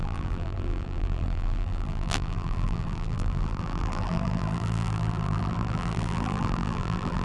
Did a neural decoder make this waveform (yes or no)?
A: yes